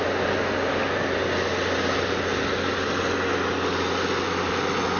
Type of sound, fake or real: real